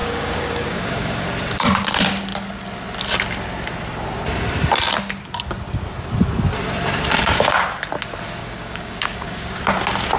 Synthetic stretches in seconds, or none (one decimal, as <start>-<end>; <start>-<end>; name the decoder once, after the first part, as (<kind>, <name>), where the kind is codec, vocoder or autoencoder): 0.0-1.3 (codec, DAC); 8.4-9.6